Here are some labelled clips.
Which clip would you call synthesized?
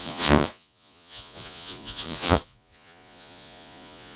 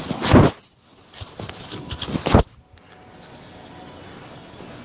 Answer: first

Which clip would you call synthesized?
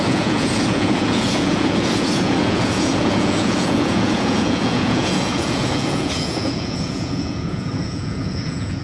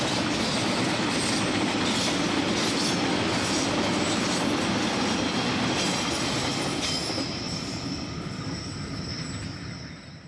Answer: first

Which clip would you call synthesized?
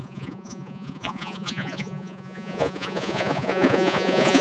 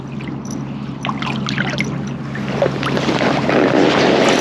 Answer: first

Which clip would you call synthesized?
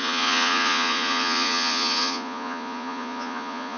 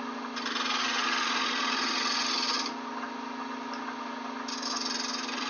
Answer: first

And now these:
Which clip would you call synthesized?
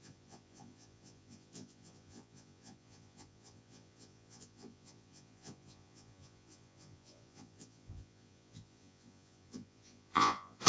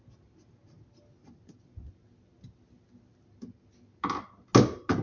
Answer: first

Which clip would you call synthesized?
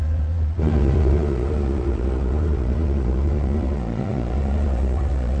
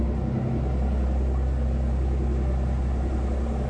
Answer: first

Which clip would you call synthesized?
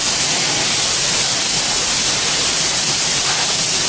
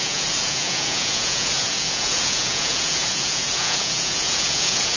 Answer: second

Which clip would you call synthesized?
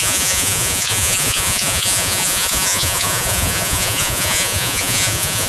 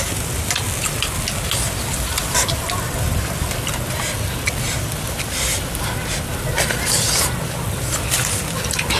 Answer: first